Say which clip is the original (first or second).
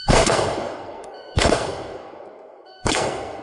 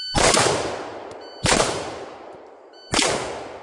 second